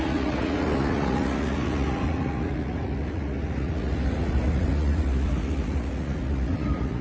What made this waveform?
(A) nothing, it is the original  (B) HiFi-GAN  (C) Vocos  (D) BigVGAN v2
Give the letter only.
C